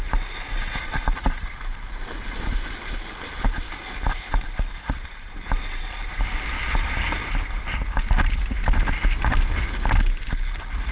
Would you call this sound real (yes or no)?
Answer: yes